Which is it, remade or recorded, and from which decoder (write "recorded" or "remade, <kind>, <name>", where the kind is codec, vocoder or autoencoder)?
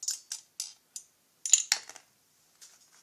recorded